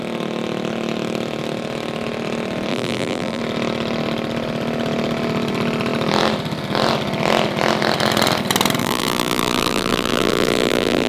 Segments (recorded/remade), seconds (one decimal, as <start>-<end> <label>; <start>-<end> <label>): 0.0-2.7 recorded; 2.7-3.4 remade; 3.4-8.8 recorded; 8.8-11.1 remade